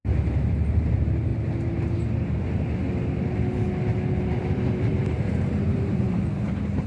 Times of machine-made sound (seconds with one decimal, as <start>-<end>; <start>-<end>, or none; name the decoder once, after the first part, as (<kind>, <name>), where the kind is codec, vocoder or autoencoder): 0.0-1.3 (vocoder, BigVGAN v2); 4.2-6.9